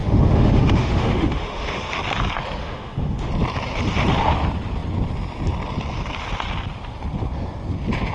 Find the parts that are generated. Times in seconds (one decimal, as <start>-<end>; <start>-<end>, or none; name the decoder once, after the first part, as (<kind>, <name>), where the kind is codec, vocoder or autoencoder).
0.0-1.9 (autoencoder, DAC-VAE); 2.6-3.3